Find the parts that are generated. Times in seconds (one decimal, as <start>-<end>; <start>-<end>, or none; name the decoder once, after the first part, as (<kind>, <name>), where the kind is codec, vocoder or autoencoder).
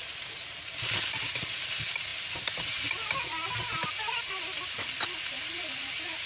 none